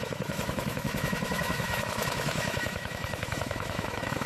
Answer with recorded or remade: remade